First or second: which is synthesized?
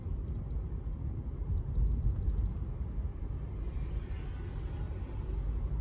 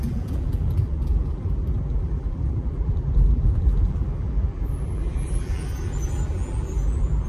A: second